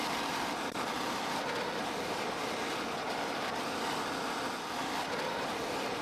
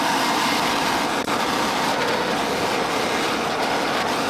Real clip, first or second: second